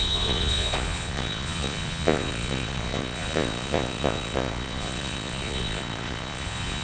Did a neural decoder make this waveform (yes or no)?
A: yes